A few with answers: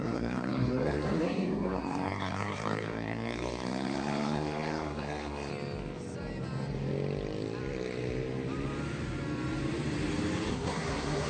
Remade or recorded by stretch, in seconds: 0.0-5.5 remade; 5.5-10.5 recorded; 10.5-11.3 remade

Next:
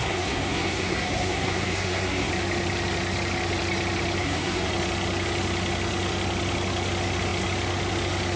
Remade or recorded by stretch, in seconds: 0.0-2.3 remade; 2.3-4.2 recorded; 4.2-4.7 remade; 4.7-8.4 recorded

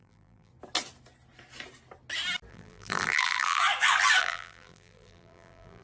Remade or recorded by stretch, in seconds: 0.0-0.5 remade; 0.5-2.5 recorded; 2.5-3.6 remade; 3.6-4.2 recorded; 4.2-5.8 remade

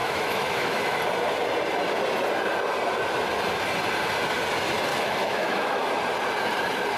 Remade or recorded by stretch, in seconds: 0.0-1.0 remade; 1.0-4.9 recorded; 4.9-5.9 remade; 5.9-7.0 recorded

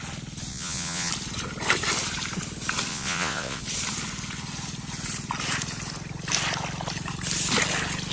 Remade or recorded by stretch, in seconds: 0.0-0.5 recorded; 0.5-1.1 remade; 1.1-2.9 recorded; 2.9-3.6 remade; 3.6-8.1 recorded

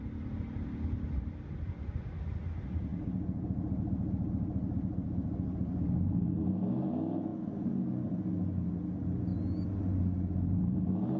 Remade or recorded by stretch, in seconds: 0.0-11.2 recorded

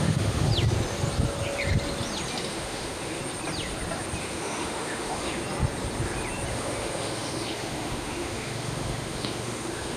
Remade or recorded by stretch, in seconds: 0.0-0.5 remade; 0.5-2.5 recorded; 2.5-3.2 remade; 3.2-4.2 recorded; 4.2-5.4 remade; 5.4-6.5 recorded; 6.5-10.0 remade

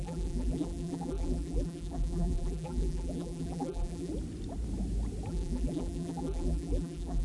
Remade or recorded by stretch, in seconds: 0.0-4.1 remade; 4.1-5.3 recorded; 5.3-7.2 remade